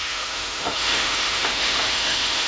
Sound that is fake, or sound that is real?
fake